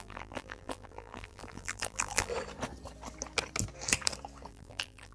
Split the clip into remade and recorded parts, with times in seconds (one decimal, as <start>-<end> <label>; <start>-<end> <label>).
0.0-2.3 remade; 2.3-4.5 recorded; 4.5-5.1 remade